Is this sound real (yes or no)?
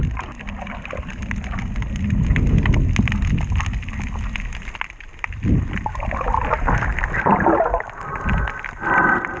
yes